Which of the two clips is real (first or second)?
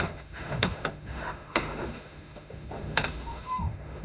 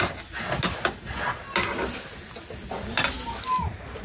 second